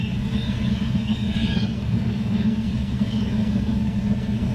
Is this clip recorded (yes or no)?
no